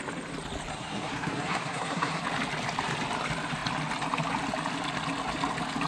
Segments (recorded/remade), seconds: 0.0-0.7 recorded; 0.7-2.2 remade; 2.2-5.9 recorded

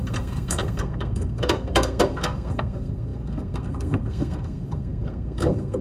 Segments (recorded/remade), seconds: 0.0-5.8 remade

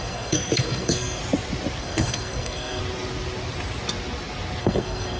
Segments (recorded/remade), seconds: 0.0-1.2 remade; 1.2-1.8 recorded; 1.8-2.8 remade; 2.8-4.6 recorded; 4.6-5.2 remade

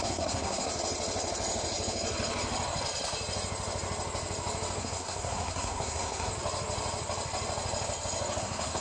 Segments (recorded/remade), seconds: 0.0-0.7 remade; 0.7-4.8 recorded; 4.8-6.3 remade; 6.3-8.4 recorded; 8.4-8.8 remade

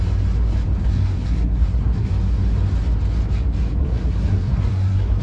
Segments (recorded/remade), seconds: 0.0-0.8 recorded; 0.8-2.1 remade; 2.1-3.8 recorded; 3.8-5.2 remade

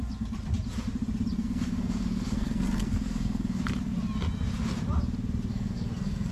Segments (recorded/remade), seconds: 0.0-1.4 recorded; 1.4-3.6 remade; 3.6-5.5 recorded; 5.5-6.3 remade

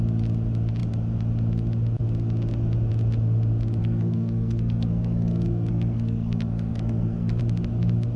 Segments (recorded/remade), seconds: 0.0-3.8 recorded; 3.8-7.4 remade; 7.4-8.2 recorded